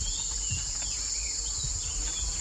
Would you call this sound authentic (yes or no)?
yes